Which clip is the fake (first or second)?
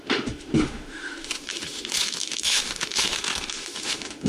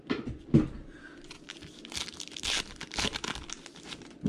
first